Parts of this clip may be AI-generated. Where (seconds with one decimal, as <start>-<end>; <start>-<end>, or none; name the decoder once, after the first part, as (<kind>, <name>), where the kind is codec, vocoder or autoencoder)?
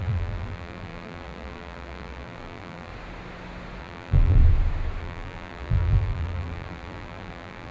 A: 0.0-2.9 (vocoder, BigVGAN v2); 3.8-4.4; 5.0-7.7